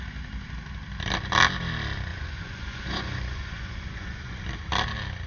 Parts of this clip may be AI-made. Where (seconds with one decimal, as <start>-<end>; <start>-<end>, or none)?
2.1-4.3